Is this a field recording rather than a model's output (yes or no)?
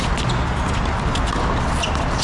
yes